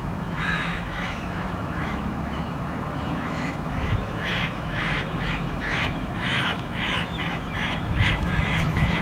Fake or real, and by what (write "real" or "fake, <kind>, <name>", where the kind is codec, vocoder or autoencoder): fake, autoencoder, DAC-VAE